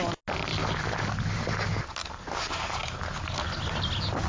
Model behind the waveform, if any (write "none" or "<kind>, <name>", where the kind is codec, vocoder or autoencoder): none